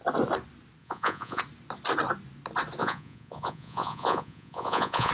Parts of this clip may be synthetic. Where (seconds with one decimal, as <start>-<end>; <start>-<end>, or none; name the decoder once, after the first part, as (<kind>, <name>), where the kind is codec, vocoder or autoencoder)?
0.8-1.4 (vocoder, Vocos); 2.8-5.1